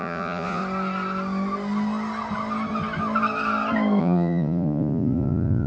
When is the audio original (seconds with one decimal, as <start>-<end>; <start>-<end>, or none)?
0.6-4.0